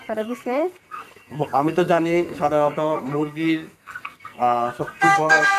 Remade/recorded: remade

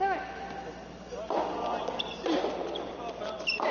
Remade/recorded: recorded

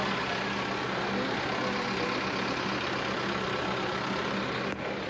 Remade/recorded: recorded